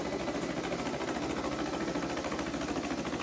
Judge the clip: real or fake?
real